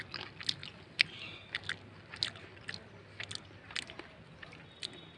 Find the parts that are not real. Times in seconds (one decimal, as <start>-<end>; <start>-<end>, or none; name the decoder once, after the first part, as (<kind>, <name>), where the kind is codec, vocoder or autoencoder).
none

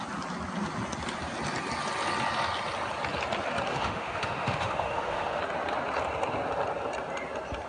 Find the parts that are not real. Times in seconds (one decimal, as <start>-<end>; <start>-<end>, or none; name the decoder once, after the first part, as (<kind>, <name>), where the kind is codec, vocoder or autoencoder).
3.7-5.4 (autoencoder, DAC-VAE)

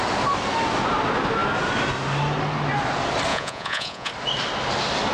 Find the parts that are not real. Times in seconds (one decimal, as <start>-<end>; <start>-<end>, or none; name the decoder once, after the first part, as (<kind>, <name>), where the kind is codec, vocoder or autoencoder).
3.3-4.1 (vocoder, Vocos)

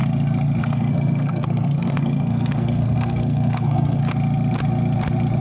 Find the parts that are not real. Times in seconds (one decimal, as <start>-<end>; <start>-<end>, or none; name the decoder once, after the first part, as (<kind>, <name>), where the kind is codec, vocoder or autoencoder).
0.6-4.0 (codec, SNAC)